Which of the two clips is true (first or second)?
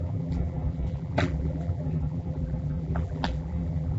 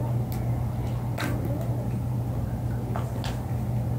second